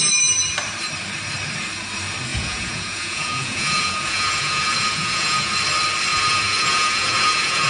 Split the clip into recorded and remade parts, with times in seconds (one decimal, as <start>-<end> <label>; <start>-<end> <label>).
0.0-2.3 recorded; 2.3-5.5 remade; 5.5-6.1 recorded; 6.1-7.7 remade